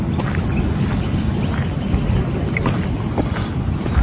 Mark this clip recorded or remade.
recorded